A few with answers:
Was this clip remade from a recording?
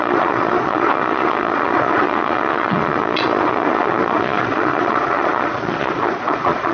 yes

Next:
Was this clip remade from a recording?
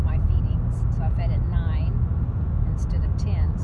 no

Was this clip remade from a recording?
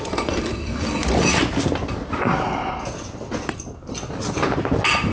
no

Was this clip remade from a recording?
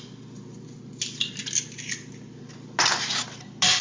no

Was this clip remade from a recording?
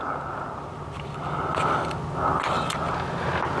no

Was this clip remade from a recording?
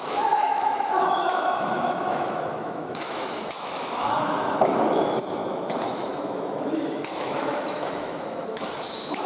yes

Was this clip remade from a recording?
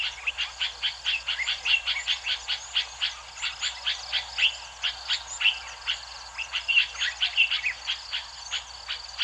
no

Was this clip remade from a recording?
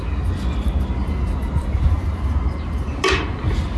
no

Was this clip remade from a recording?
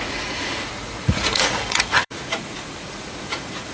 yes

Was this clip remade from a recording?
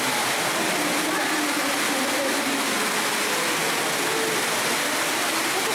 no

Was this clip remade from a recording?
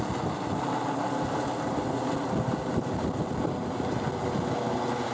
no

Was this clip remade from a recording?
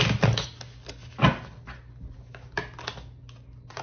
no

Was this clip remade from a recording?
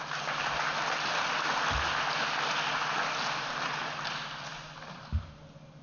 no